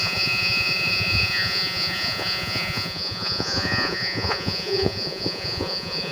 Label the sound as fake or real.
fake